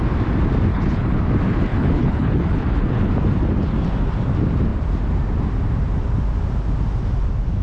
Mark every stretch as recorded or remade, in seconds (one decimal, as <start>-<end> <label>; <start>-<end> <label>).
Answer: 0.0-0.7 recorded; 0.7-1.2 remade; 1.2-1.7 recorded; 1.7-3.1 remade; 3.1-7.6 recorded